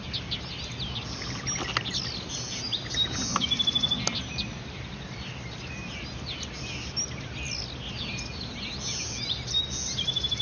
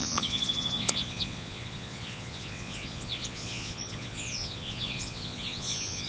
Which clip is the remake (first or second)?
second